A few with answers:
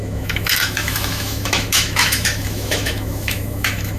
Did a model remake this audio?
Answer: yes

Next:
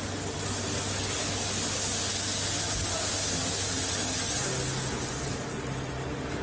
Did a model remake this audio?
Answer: no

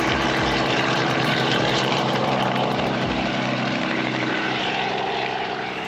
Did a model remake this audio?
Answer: yes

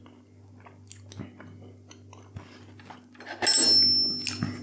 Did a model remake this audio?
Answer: no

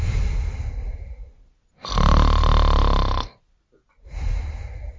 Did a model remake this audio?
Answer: no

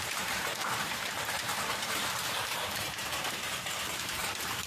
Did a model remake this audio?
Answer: yes